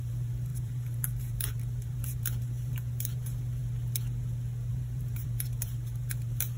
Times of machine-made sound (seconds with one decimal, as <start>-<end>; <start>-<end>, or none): 0.0-3.6; 4.7-6.6